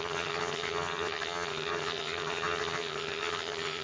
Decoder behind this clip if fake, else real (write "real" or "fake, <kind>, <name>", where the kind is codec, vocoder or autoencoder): fake, vocoder, HiFi-GAN